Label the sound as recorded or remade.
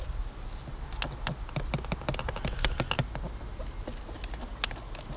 recorded